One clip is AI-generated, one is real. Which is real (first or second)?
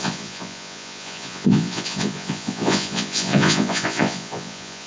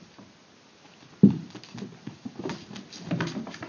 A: second